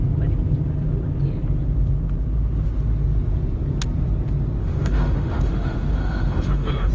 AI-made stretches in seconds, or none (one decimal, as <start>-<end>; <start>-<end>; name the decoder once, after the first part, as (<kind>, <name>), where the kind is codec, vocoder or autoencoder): 4.6-6.9 (autoencoder, DAC-VAE)